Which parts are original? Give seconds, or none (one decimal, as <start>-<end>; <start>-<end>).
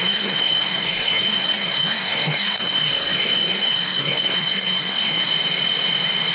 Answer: 5.3-6.3